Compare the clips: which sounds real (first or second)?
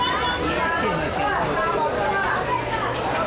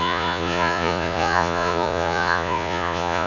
first